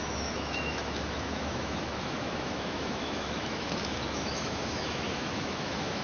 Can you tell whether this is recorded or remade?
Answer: remade